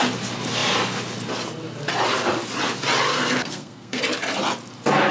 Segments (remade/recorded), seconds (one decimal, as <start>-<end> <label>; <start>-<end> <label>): 0.0-3.1 recorded; 3.1-4.0 remade; 4.0-5.1 recorded